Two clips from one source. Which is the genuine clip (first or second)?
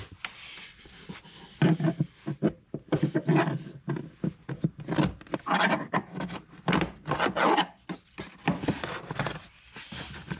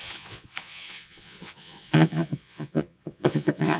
first